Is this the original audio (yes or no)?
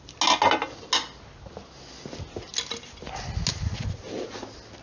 yes